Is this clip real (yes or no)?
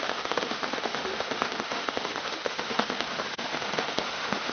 no